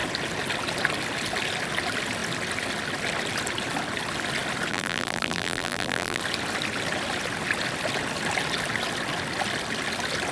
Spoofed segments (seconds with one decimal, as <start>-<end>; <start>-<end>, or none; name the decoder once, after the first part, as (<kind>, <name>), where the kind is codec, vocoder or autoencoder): 4.7-6.2 (vocoder, BigVGAN v2)